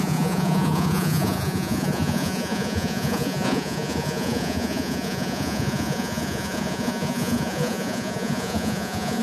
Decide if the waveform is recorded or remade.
remade